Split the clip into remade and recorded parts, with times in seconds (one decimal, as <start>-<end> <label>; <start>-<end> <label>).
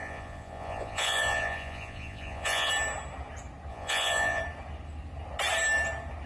0.0-2.7 remade; 2.7-3.7 recorded; 3.7-4.4 remade; 4.4-6.3 recorded